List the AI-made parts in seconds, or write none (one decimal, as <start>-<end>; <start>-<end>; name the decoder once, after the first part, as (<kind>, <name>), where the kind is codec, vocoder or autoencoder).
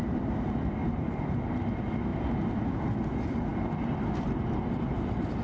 0.8-1.6 (vocoder, BigVGAN v2)